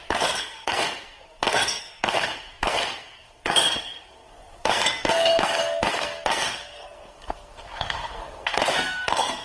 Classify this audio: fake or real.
fake